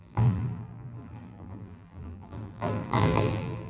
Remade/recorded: remade